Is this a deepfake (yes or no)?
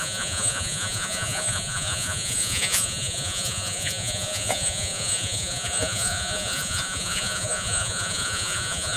yes